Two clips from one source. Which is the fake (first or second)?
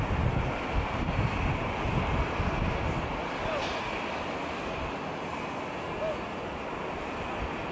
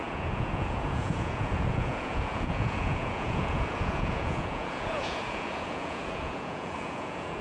second